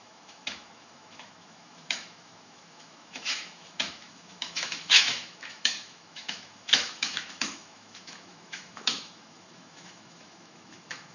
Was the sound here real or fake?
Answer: fake